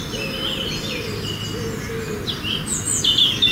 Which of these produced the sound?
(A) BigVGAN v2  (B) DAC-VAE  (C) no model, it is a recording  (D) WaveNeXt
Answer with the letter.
C